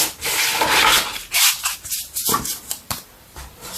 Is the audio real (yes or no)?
yes